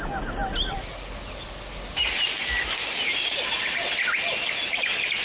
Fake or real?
real